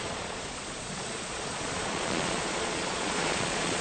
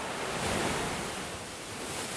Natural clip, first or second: second